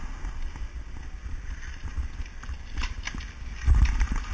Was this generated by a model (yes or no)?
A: no